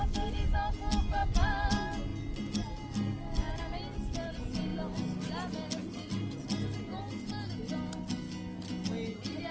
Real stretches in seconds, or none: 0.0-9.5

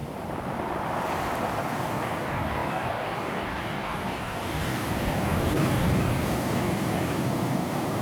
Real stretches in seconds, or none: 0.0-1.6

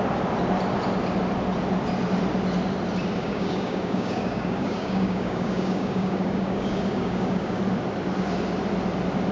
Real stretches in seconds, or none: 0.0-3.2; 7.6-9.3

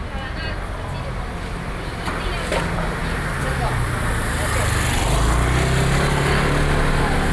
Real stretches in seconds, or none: 0.0-7.3

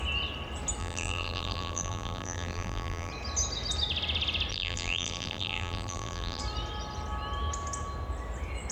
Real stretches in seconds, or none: 0.0-0.8; 3.1-4.5; 6.4-8.7

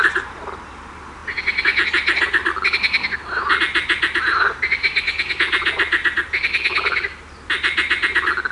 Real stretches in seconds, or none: 0.0-8.5